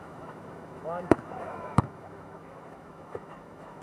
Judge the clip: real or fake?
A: fake